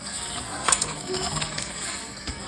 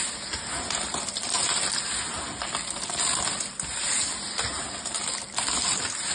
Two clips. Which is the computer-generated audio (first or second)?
first